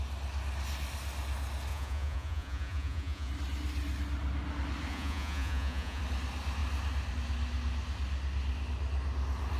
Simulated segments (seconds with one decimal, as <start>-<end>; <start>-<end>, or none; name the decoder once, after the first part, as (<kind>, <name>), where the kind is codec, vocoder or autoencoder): 1.7-3.3 (vocoder, Vocos); 4.9-6.0